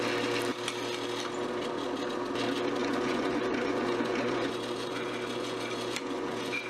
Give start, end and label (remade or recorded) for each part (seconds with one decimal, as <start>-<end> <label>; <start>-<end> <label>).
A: 0.0-2.8 recorded; 2.8-6.7 remade